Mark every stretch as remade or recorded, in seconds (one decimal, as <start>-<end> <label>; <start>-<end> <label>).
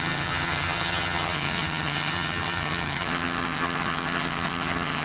0.0-5.0 remade